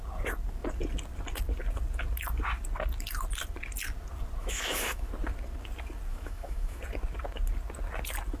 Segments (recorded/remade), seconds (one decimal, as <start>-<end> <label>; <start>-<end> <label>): 0.0-4.4 recorded; 4.4-5.1 remade; 5.1-6.1 recorded; 6.1-6.8 remade; 6.8-8.4 recorded